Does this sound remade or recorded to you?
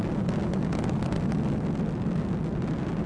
recorded